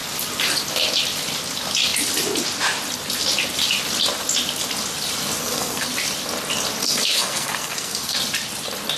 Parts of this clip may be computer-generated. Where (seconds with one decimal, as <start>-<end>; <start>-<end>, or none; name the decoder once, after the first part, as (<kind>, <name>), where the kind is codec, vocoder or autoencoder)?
5.4-5.9 (codec, SNAC); 6.8-8.2